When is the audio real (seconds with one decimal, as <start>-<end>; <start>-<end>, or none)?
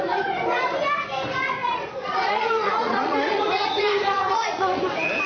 0.0-1.6; 4.8-5.3